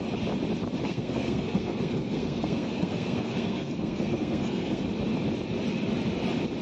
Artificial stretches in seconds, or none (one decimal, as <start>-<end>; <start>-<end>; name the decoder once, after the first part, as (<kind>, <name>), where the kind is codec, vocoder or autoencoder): 0.8-4.8 (codec, SNAC)